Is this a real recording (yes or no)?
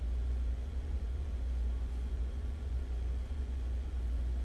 no